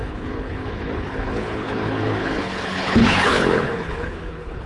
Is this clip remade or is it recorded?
remade